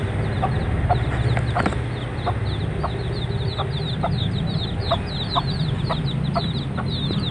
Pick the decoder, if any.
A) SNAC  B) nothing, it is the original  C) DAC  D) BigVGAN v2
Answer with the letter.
B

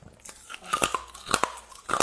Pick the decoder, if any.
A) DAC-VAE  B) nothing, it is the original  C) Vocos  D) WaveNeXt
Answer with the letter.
B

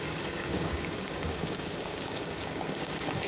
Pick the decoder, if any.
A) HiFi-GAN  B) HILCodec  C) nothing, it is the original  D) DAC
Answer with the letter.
D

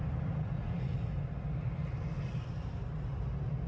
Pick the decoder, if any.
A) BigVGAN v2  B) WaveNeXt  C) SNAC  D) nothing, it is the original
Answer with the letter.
D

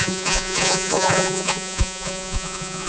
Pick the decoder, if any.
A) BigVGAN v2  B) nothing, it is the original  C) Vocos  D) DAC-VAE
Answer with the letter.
C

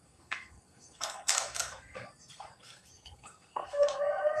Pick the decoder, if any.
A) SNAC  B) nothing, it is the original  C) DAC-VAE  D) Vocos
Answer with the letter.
A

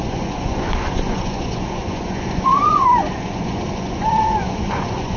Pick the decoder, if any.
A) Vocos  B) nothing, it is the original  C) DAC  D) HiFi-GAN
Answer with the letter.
A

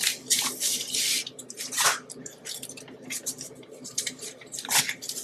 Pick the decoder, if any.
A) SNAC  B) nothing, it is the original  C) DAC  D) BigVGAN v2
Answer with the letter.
D